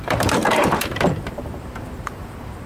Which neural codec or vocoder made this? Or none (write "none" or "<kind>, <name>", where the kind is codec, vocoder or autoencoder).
vocoder, BigVGAN v2